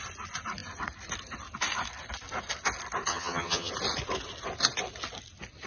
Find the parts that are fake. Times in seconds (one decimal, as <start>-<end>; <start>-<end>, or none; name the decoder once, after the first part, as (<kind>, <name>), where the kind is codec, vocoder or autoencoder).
3.1-3.7 (vocoder, HiFi-GAN)